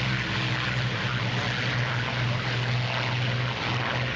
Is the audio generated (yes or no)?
no